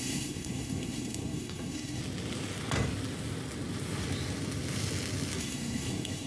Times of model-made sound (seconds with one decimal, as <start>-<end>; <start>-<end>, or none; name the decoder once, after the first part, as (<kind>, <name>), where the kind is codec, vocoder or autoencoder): 0.0-2.0 (codec, SNAC); 5.4-6.3